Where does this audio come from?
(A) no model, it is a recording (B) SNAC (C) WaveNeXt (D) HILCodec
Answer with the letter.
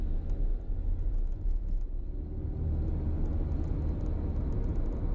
A